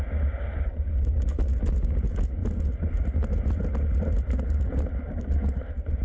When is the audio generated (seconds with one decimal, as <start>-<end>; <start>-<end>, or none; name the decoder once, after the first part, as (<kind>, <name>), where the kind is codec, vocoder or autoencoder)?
none